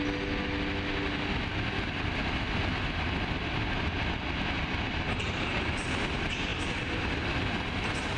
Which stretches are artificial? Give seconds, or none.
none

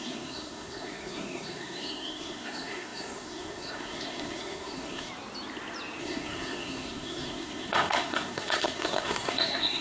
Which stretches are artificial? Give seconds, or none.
0.0-5.1 (codec, SNAC); 6.0-9.8